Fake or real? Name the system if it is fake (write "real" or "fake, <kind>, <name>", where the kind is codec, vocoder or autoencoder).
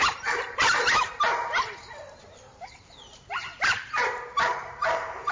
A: fake, vocoder, BigVGAN v2